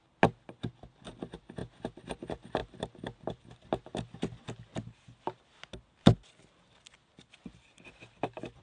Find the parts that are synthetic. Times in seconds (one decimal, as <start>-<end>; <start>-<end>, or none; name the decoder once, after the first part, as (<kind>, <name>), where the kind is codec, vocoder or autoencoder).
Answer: none